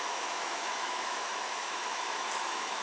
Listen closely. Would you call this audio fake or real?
fake